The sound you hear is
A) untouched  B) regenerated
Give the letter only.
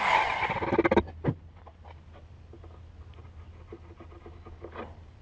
A